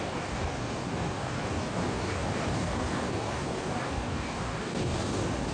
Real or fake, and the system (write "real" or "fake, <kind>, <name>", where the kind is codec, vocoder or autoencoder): fake, codec, DAC